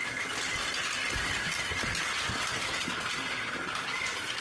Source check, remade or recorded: recorded